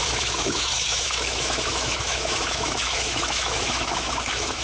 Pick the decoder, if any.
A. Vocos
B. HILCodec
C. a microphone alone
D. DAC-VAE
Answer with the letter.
D